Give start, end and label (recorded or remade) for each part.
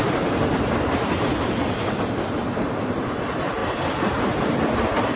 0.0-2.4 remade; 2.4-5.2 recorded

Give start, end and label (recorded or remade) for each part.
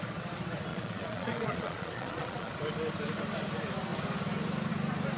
0.0-0.7 recorded; 0.7-2.5 remade; 2.5-5.2 recorded